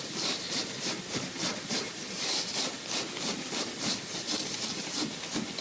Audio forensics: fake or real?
fake